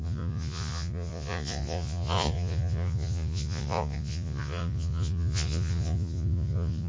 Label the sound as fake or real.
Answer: fake